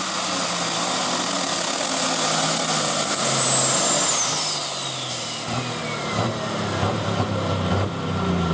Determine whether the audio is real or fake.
real